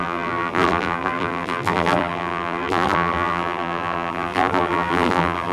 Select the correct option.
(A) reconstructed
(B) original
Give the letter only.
A